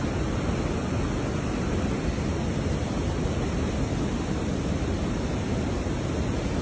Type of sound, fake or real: real